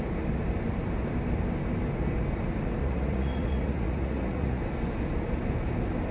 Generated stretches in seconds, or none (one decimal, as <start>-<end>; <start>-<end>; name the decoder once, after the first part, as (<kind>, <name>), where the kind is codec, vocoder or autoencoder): 2.8-4.6 (vocoder, Vocos)